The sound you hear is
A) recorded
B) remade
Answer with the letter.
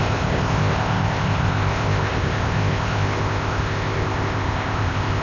B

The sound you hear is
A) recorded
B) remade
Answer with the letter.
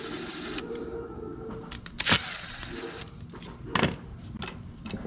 A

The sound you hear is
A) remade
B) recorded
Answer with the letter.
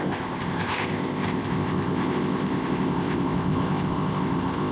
A